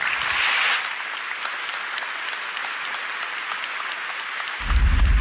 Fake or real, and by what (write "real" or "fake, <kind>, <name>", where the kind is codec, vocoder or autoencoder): real